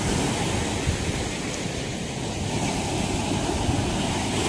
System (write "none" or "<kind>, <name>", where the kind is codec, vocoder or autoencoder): none